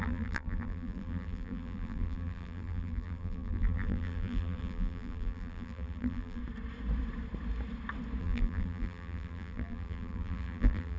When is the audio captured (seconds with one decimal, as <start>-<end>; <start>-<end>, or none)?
6.4-8.2